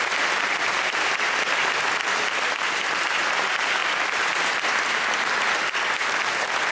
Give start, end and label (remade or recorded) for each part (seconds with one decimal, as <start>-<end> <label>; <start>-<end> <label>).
0.0-6.7 recorded